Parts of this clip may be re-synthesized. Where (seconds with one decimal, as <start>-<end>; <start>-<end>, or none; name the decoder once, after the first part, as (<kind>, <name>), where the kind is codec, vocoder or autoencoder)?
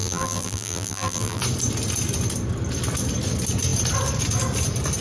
0.0-1.4 (vocoder, BigVGAN v2)